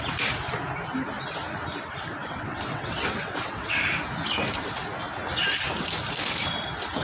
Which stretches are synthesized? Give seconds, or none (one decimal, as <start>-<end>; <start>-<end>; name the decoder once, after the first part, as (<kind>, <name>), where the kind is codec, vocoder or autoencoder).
2.2-3.8 (vocoder, WaveNeXt)